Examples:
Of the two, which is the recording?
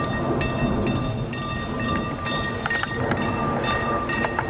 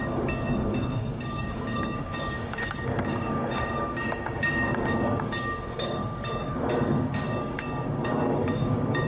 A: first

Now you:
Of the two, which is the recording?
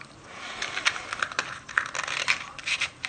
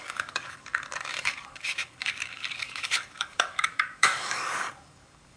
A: first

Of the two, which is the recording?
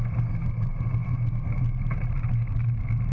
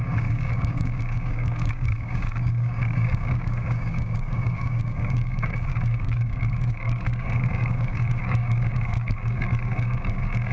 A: first